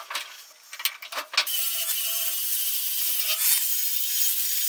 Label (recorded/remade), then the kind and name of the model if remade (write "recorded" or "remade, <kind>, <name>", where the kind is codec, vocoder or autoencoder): recorded